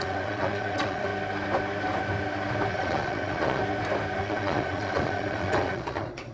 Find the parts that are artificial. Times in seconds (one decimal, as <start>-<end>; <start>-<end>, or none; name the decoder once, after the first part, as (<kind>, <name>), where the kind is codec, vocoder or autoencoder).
0.0-1.1 (vocoder, Vocos); 2.7-3.6; 4.2-6.3